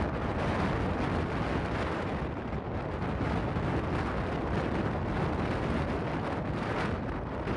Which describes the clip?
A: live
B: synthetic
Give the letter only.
A